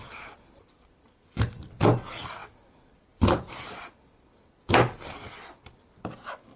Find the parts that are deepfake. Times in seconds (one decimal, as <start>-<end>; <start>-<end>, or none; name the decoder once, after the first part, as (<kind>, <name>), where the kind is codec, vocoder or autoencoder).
none